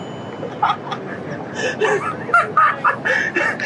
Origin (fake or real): real